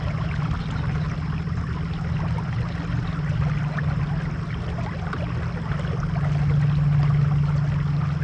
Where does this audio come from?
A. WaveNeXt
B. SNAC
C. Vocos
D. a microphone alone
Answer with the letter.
D